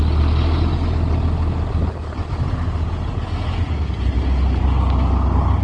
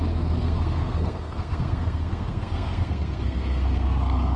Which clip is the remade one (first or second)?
second